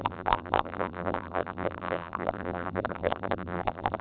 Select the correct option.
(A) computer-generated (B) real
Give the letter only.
A